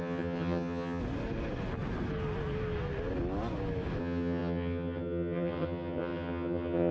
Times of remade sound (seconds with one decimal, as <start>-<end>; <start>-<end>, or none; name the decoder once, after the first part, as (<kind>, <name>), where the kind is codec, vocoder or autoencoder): 0.0-1.0 (vocoder, HiFi-GAN); 4.0-6.9